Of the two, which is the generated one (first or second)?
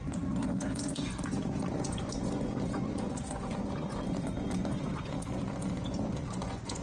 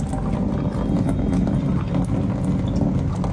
first